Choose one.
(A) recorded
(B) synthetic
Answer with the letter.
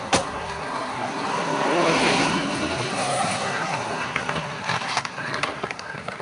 B